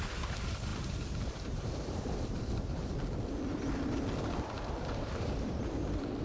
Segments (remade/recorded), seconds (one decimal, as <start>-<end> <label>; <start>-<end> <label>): 0.0-2.8 remade; 2.8-4.8 recorded; 4.8-6.2 remade